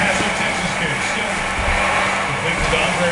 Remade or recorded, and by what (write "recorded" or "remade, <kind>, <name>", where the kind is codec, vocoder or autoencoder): recorded